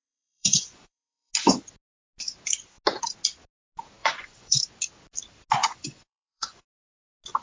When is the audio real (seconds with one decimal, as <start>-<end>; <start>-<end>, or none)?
1.3-4.0; 4.6-5.6; 6.6-7.4